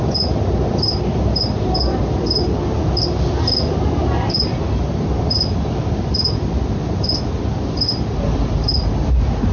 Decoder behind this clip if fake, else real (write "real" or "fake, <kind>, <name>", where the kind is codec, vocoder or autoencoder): real